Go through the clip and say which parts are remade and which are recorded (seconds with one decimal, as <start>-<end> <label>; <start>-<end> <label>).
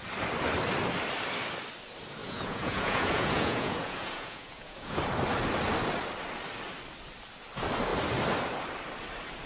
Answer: 0.0-2.2 recorded; 2.2-5.0 remade; 5.0-9.5 recorded